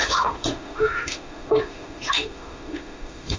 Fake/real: fake